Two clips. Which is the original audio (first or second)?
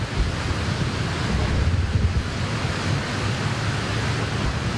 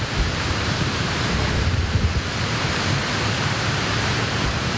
first